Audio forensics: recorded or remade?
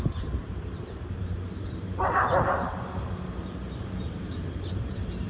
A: remade